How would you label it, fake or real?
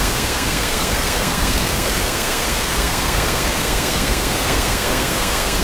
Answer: fake